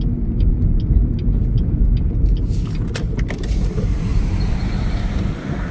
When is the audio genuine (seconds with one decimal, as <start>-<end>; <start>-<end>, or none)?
0.0-4.1